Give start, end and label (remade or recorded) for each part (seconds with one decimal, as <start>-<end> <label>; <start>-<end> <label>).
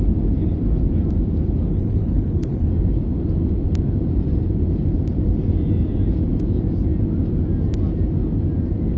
0.0-1.7 recorded; 1.7-2.7 remade; 2.7-9.0 recorded